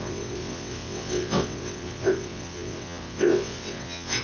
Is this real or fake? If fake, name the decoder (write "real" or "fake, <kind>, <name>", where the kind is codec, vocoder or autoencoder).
fake, vocoder, WaveNeXt